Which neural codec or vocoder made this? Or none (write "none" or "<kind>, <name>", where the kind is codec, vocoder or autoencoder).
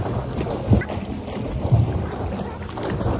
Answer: none